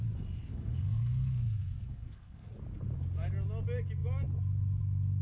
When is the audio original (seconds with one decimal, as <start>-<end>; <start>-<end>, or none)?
0.0-0.5; 2.5-5.2